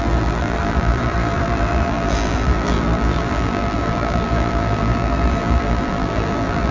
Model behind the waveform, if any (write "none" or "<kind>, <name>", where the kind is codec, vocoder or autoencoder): vocoder, BigVGAN v2